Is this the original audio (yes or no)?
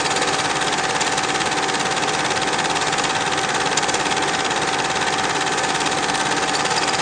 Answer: yes